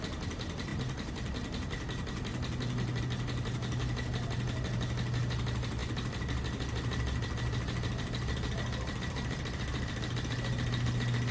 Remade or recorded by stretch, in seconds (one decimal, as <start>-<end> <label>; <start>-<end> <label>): 0.0-11.3 remade